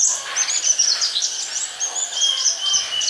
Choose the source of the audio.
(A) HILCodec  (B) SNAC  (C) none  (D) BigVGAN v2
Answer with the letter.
C